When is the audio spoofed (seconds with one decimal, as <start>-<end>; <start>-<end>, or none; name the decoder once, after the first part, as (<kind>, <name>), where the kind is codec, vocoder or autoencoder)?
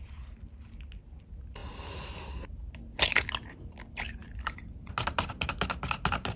none